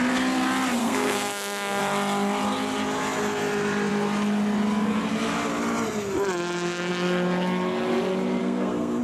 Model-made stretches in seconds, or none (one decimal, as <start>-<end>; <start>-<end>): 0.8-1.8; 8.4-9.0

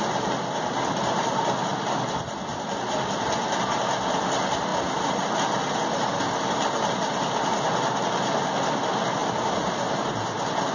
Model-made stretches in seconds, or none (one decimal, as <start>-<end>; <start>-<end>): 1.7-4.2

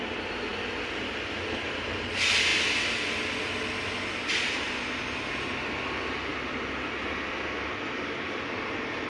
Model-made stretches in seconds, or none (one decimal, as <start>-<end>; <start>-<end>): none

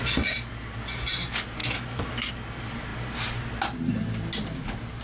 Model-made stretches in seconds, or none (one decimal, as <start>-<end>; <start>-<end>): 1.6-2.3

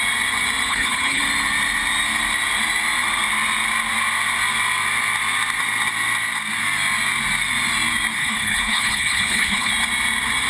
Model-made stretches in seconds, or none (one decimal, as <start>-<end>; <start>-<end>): 0.7-1.2; 8.2-9.7

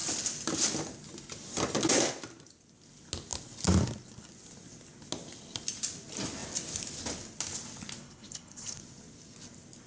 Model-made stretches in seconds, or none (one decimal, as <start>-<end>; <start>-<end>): 8.0-8.8

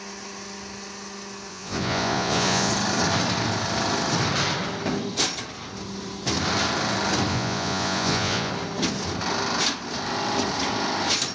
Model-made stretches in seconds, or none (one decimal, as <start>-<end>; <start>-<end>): 1.5-2.7; 7.3-8.5